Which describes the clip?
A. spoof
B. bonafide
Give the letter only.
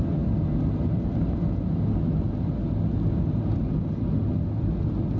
B